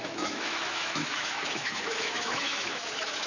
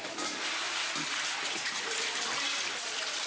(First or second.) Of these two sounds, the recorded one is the second